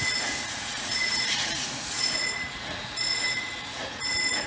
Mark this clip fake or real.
fake